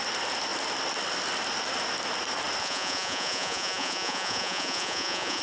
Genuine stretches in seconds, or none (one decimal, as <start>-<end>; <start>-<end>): 0.0-2.6